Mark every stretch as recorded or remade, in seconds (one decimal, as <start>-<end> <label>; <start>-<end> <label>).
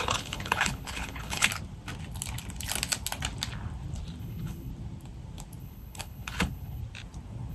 0.0-1.5 remade; 1.5-4.2 recorded; 4.2-4.7 remade; 4.7-5.6 recorded; 5.6-6.8 remade; 6.8-7.5 recorded